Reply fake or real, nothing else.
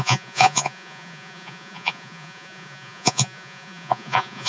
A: fake